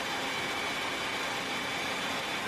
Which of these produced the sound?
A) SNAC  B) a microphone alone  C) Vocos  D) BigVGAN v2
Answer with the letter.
B